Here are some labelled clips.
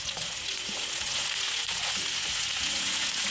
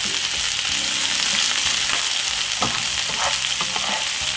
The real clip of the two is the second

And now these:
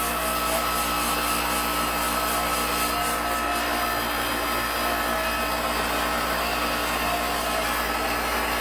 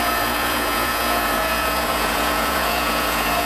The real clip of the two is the first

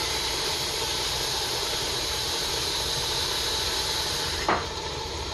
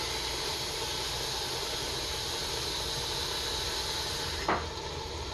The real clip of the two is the second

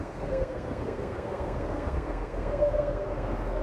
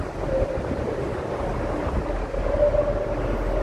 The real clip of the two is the second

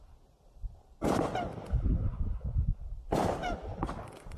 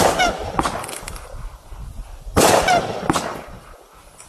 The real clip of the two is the second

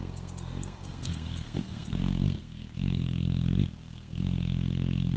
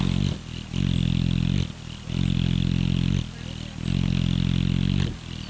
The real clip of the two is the second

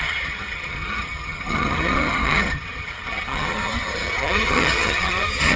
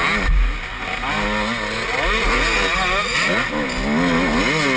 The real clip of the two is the second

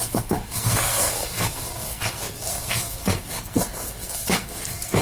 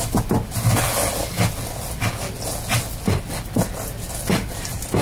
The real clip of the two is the second